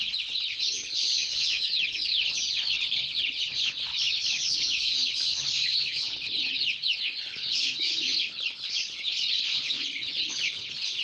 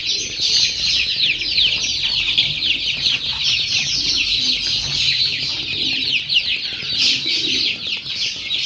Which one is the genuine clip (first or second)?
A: second